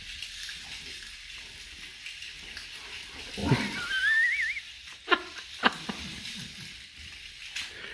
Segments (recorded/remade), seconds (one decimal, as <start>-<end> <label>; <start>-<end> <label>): 0.0-7.9 recorded